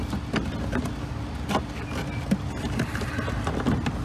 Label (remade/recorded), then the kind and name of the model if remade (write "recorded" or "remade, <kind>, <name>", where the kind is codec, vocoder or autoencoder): recorded